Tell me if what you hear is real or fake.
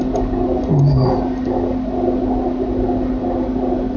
real